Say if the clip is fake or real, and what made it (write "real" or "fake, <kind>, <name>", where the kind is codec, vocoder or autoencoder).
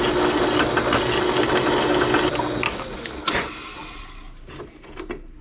real